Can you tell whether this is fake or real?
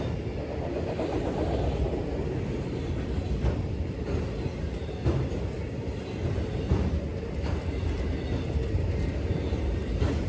real